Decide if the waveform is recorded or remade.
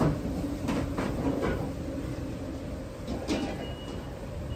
remade